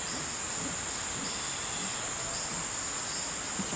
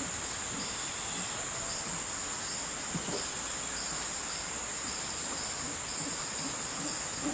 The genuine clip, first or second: second